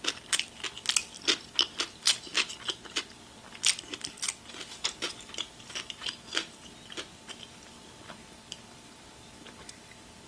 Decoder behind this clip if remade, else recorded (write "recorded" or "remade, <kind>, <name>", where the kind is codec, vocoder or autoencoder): recorded